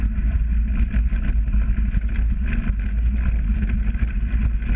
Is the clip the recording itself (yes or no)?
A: yes